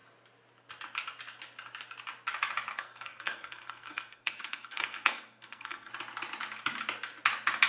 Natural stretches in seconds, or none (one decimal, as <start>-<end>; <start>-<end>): 0.0-2.7; 5.9-7.7